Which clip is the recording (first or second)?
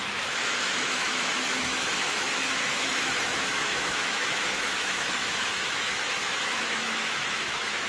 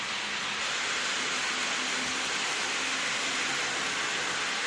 second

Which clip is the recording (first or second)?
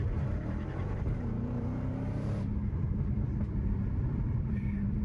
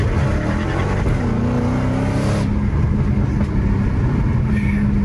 second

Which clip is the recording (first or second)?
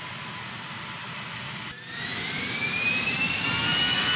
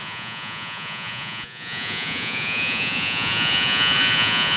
first